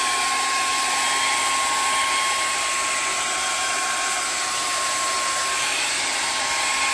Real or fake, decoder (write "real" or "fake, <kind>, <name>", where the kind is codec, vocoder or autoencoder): real